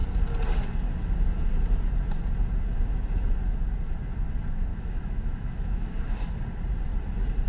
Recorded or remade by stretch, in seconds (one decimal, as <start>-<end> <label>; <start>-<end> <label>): 0.0-4.7 recorded; 4.7-6.3 remade; 6.3-7.5 recorded